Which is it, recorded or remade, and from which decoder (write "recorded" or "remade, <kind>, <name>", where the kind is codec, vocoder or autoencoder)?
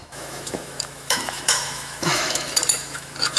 remade, autoencoder, DAC-VAE